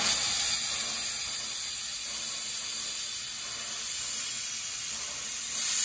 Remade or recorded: recorded